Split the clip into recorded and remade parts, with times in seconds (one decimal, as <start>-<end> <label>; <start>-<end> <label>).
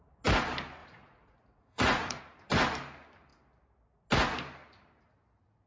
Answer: 0.0-0.8 recorded; 0.8-2.2 remade; 2.2-5.7 recorded